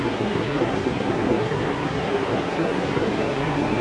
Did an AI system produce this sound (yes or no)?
yes